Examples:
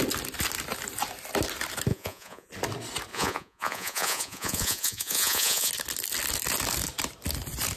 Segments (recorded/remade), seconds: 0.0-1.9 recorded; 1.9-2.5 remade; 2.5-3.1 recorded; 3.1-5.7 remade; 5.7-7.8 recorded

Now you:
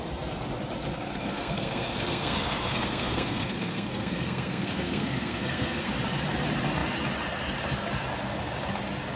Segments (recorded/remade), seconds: 0.0-1.1 recorded; 1.1-5.9 remade; 5.9-9.2 recorded

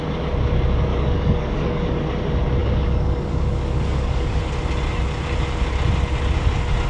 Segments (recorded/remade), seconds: 0.0-0.9 recorded; 0.9-2.0 remade; 2.0-2.6 recorded; 2.6-4.4 remade; 4.4-6.9 recorded

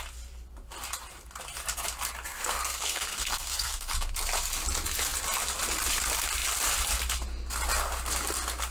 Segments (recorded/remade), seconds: 0.0-2.3 recorded; 2.3-4.1 remade; 4.1-8.7 recorded

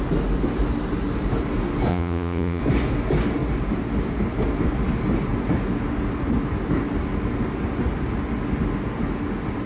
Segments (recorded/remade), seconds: 0.0-1.9 recorded; 1.9-2.6 remade; 2.6-9.7 recorded